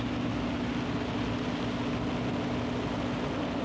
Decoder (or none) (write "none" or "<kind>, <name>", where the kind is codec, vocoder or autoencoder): none